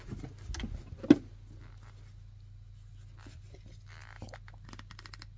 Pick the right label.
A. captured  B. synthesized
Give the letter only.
A